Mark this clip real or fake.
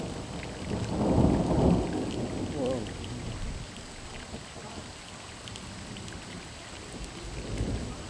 real